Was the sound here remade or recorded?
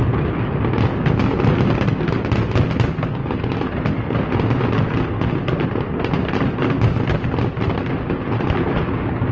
recorded